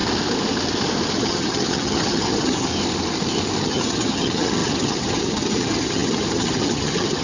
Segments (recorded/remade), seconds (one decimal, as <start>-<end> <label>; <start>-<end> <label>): 0.0-1.2 recorded; 1.2-2.7 remade; 2.7-3.6 recorded; 3.6-7.2 remade